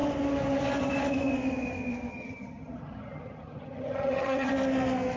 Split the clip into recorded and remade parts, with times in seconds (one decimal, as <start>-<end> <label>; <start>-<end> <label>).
0.0-2.1 recorded; 2.1-4.5 remade; 4.5-5.2 recorded